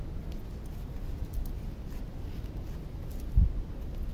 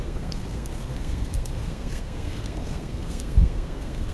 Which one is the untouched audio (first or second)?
first